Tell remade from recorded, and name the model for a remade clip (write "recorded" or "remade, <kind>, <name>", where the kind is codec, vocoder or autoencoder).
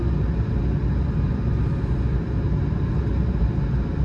recorded